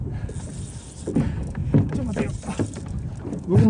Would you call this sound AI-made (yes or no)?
no